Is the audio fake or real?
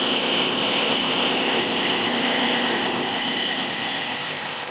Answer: fake